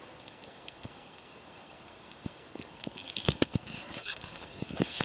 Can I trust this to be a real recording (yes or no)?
no